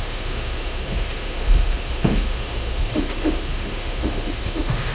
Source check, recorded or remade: remade